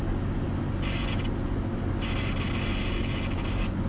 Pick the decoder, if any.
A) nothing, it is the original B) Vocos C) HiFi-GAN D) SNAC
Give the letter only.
A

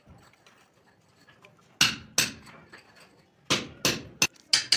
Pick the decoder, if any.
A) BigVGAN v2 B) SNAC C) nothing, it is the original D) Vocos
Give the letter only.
C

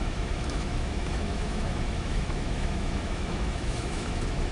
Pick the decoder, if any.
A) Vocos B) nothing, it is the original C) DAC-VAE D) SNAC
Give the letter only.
C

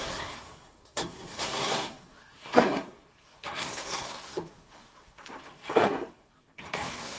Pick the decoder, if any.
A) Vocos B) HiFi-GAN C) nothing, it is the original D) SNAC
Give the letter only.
D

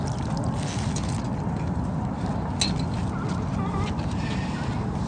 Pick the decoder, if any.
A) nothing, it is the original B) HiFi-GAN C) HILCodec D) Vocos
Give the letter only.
A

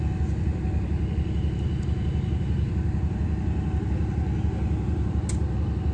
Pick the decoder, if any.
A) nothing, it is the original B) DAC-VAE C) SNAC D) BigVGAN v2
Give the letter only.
A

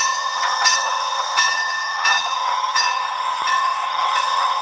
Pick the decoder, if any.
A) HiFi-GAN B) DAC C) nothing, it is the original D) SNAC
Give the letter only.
A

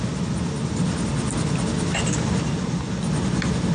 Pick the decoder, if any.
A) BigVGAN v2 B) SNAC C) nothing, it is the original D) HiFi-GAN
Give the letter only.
C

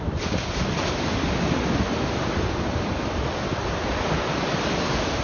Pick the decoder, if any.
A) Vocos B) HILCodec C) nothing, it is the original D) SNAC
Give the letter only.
C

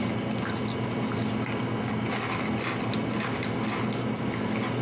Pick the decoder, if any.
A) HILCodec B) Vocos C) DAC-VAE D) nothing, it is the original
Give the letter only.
D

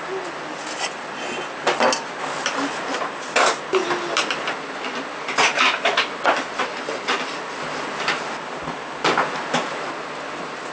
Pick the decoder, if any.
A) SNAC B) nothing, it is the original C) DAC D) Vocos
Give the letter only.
B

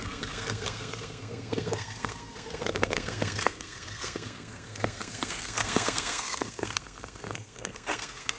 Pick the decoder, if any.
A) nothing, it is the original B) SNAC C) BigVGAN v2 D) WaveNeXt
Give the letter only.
B